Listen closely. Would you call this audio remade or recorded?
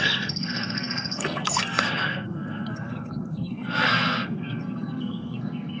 remade